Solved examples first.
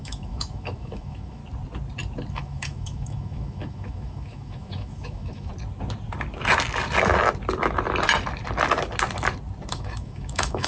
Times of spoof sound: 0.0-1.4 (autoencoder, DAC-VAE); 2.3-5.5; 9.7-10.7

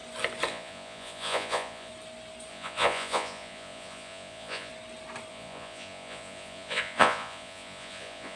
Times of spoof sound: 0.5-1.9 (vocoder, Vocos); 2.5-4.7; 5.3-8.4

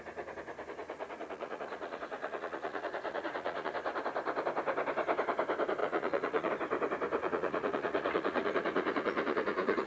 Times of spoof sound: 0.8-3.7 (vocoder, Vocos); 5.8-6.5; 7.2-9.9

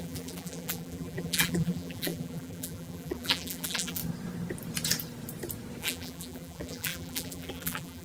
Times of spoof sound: 0.0-4.0 (vocoder, BigVGAN v2); 5.8-8.0

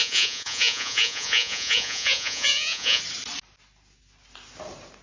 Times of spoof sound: 0.0-3.0 (vocoder, Vocos)

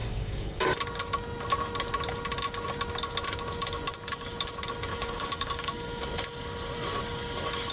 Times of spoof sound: 0.0-0.6 (codec, DAC); 4.9-6.0

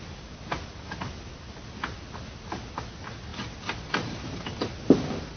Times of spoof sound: none